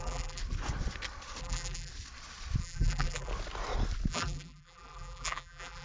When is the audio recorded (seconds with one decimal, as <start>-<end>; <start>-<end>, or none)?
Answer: 0.4-1.4; 1.9-2.6; 3.3-4.1